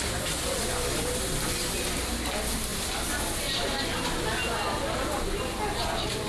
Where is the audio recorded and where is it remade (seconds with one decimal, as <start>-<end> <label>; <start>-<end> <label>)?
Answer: 0.0-6.3 recorded